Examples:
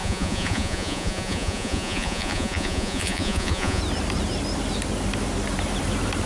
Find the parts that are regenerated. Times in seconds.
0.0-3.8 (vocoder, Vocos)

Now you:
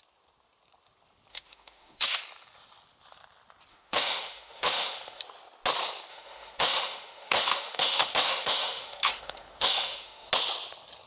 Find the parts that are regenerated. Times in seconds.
1.3-2.2 (autoencoder, DAC-VAE); 3.7-5.2; 6.1-10.3

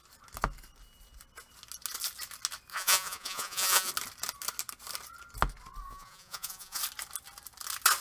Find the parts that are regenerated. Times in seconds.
2.7-3.9 (vocoder, Vocos); 5.9-6.8

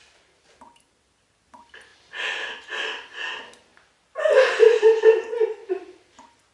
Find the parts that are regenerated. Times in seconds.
1.9-3.3 (vocoder, BigVGAN v2); 3.7-5.0; 5.6-6.5

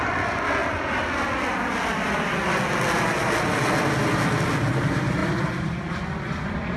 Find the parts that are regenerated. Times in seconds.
none